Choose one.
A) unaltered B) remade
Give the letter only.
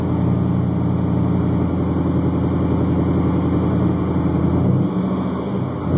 A